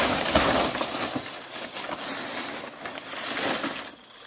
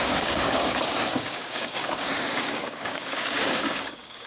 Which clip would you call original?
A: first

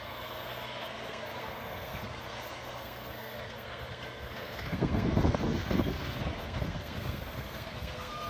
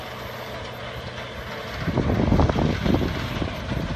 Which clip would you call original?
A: second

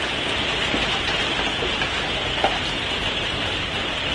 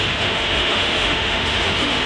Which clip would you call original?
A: first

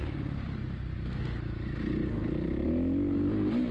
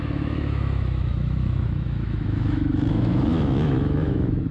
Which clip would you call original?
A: first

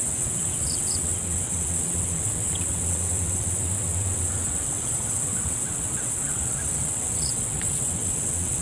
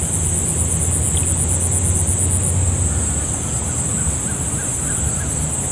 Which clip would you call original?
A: second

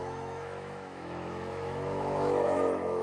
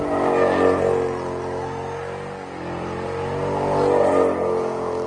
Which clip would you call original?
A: second